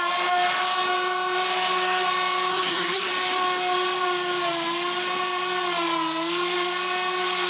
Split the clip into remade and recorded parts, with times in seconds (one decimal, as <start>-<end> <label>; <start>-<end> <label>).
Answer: 0.0-2.5 recorded; 2.5-3.1 remade; 3.1-7.5 recorded